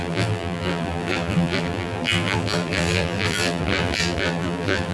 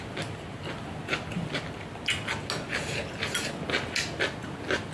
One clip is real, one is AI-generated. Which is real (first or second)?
second